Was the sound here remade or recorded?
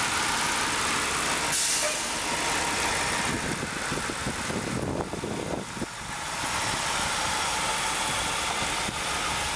recorded